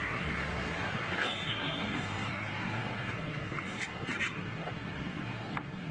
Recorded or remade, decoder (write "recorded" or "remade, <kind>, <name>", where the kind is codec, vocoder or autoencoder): remade, codec, SNAC